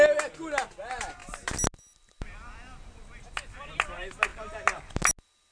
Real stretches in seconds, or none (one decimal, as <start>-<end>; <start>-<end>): 0.0-5.5